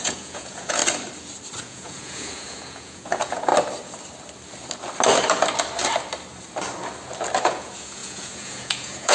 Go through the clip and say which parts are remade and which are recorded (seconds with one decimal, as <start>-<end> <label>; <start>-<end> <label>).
0.0-0.8 remade; 0.8-1.6 recorded; 1.6-3.5 remade; 3.5-7.4 recorded; 7.4-9.1 remade